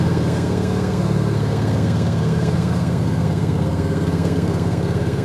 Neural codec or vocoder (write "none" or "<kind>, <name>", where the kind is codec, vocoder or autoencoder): codec, SNAC